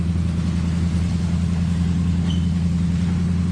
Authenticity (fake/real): real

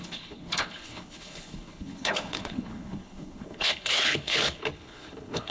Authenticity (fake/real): fake